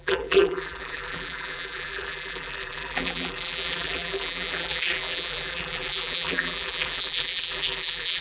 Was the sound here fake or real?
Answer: fake